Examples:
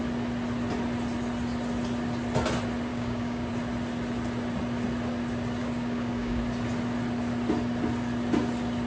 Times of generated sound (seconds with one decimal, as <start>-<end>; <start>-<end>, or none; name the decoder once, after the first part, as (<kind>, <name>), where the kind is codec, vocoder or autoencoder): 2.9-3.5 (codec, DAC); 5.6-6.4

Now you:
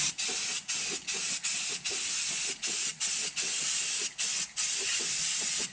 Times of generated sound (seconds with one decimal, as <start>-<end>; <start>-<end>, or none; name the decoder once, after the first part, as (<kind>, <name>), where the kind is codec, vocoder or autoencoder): none

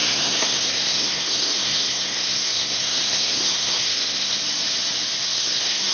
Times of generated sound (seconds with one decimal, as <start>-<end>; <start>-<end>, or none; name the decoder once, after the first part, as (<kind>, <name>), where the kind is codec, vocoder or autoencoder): 0.0-4.4 (codec, SNAC); 5.2-5.9

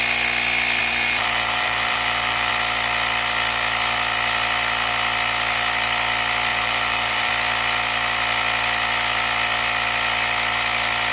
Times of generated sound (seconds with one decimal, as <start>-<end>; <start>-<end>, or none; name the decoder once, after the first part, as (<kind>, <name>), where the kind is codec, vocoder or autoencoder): 0.8-2.5 (vocoder, BigVGAN v2); 6.5-7.3